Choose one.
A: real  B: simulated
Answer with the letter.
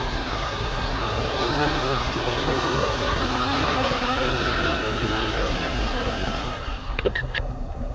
B